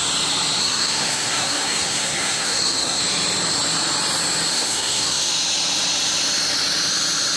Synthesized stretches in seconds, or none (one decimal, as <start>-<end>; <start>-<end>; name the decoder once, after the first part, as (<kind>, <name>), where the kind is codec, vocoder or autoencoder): 0.6-3.0 (codec, SNAC); 4.5-5.3